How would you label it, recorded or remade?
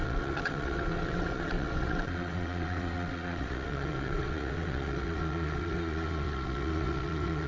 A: remade